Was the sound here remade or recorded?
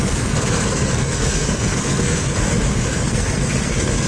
remade